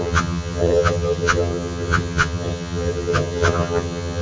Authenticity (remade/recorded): remade